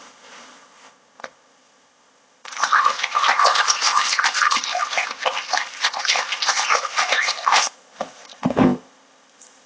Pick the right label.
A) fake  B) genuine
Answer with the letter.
A